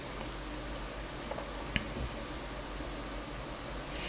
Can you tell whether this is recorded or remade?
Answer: recorded